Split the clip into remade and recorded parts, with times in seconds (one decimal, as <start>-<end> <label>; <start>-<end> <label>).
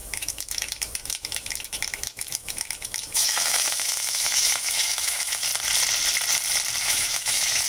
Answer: 0.0-5.5 remade; 5.5-6.8 recorded; 6.8-7.7 remade